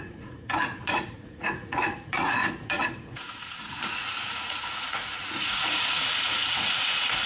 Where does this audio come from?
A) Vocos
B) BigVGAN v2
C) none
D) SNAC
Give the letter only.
A